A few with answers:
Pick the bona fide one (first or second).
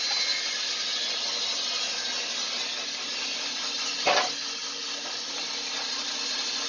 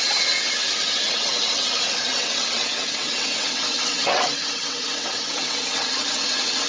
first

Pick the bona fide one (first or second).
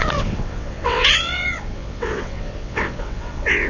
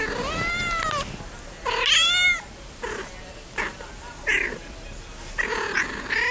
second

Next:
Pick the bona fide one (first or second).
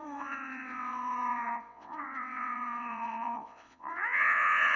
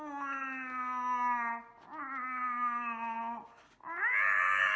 second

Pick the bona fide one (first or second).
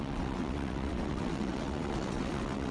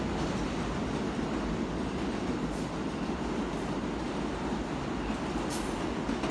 second